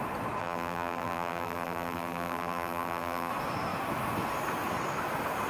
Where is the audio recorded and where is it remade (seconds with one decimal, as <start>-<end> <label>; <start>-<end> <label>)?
0.0-0.4 recorded; 0.4-3.3 remade; 3.3-5.5 recorded